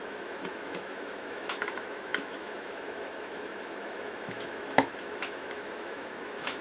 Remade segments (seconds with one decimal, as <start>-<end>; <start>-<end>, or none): 0.0-6.6